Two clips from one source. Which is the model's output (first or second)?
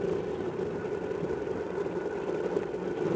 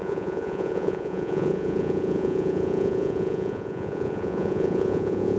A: second